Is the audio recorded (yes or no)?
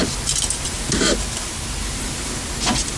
yes